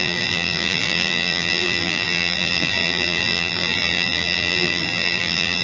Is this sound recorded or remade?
remade